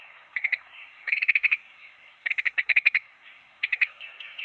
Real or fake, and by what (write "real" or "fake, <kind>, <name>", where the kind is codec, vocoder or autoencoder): fake, codec, SNAC